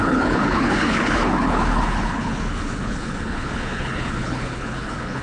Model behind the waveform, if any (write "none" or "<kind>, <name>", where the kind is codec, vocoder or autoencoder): codec, HILCodec